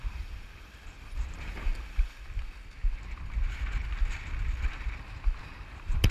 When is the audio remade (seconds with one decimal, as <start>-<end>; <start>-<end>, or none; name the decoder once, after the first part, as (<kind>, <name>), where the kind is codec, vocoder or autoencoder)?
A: 0.0-1.7 (vocoder, BigVGAN v2); 5.4-6.1